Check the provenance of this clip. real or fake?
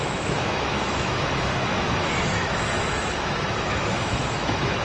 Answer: fake